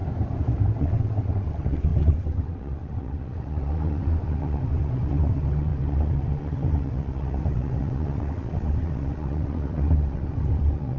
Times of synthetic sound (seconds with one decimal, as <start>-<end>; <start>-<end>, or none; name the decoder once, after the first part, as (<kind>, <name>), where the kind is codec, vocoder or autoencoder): 0.8-11.0 (vocoder, WaveNeXt)